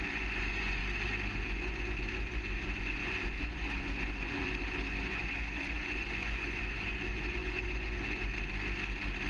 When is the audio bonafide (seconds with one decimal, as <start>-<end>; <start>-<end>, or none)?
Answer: 0.8-1.3; 8.3-9.3